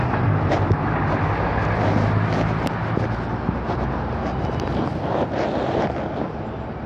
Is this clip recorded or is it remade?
recorded